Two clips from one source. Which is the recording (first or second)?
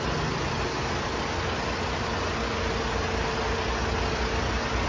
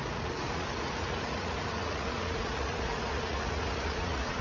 first